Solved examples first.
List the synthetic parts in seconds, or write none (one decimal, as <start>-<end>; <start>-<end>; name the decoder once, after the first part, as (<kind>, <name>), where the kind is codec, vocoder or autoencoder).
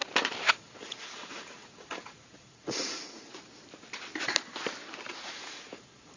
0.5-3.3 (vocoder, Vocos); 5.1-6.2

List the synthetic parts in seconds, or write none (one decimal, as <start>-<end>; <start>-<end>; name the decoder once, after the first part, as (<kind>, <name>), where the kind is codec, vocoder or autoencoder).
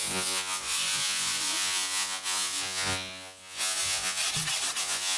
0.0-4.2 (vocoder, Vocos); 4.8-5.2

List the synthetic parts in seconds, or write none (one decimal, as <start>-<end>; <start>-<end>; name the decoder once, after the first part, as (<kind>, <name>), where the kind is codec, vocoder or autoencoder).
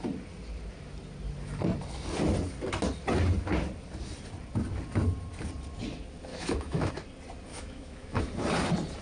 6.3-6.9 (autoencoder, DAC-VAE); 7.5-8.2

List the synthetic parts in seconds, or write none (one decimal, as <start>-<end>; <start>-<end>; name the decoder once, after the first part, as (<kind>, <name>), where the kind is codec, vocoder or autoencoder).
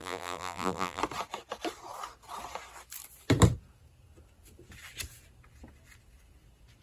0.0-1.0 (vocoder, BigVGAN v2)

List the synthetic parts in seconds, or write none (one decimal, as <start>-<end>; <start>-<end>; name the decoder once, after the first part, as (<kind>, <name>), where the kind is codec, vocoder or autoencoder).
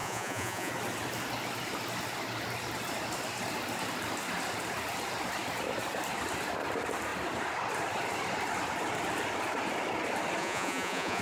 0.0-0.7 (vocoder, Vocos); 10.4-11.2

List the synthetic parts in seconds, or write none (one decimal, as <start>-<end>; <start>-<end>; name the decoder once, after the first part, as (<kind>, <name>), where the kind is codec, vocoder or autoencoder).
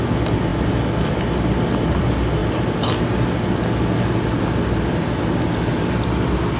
none